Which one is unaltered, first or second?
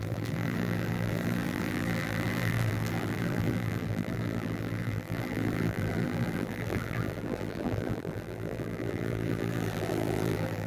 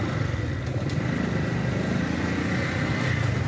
second